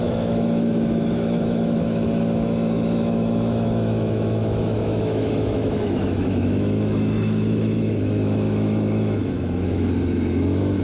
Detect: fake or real fake